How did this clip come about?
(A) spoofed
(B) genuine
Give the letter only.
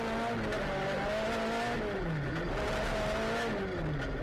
B